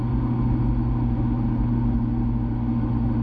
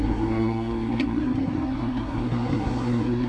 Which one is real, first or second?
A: first